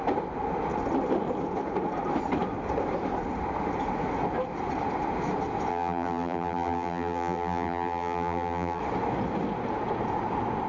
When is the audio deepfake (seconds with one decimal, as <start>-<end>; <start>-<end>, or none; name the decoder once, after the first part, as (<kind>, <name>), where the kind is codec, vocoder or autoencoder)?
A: 5.7-8.8 (vocoder, BigVGAN v2)